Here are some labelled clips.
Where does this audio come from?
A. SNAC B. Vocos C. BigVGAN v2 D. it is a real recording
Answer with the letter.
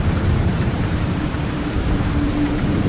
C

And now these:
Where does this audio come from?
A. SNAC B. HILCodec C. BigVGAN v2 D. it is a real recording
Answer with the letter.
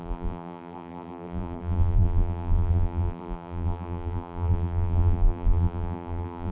C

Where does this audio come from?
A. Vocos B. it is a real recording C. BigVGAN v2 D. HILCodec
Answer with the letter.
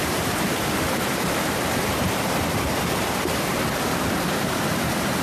C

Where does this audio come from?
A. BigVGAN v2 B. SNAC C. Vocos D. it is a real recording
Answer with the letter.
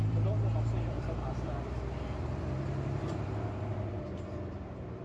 A